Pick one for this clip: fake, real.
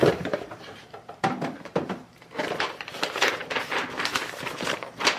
fake